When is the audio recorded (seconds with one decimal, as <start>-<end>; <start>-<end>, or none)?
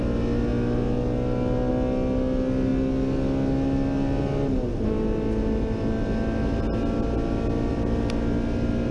0.0-8.9